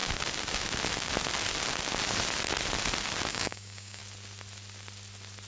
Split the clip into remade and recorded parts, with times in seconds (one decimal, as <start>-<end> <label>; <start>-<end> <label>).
0.0-3.3 recorded; 3.3-4.0 remade; 4.0-5.5 recorded